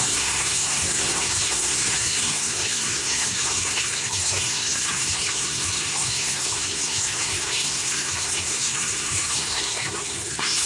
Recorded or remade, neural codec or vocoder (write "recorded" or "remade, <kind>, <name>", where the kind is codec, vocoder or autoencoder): remade, codec, SNAC